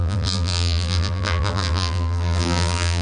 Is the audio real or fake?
fake